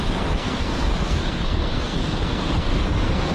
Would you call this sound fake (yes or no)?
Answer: yes